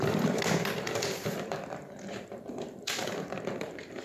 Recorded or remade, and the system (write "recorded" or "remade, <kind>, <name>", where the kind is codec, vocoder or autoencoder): remade, vocoder, BigVGAN v2